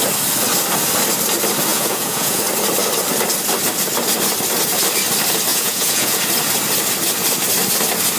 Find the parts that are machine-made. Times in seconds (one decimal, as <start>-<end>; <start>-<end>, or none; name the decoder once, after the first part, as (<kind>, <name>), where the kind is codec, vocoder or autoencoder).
1.7-2.4 (vocoder, Vocos); 5.5-6.2